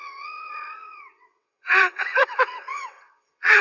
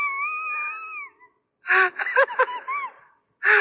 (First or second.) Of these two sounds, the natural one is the second